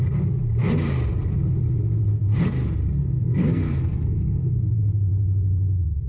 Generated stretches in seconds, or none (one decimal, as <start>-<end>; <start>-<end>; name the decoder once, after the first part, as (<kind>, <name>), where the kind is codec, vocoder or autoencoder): 3.0-4.5 (codec, SNAC)